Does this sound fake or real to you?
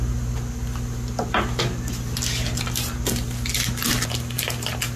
real